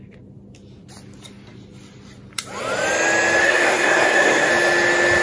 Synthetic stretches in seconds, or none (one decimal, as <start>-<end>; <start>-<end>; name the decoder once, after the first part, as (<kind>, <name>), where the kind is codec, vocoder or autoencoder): 3.4-4.5 (codec, SNAC)